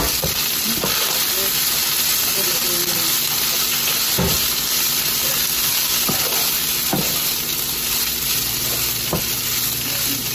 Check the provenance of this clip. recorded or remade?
recorded